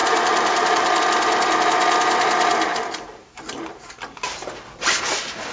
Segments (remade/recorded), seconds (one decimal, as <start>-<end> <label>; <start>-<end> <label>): 0.0-1.0 remade; 1.0-2.7 recorded; 2.7-3.9 remade; 3.9-5.5 recorded